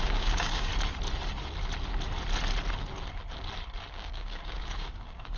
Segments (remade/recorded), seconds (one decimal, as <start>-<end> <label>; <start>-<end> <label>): 0.0-0.7 remade; 0.7-3.9 recorded; 3.9-5.4 remade